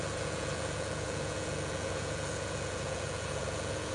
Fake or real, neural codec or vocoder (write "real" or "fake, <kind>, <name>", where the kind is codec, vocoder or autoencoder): fake, vocoder, Vocos